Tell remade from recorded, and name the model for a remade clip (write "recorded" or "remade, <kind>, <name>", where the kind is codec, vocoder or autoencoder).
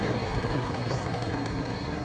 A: remade, codec, SNAC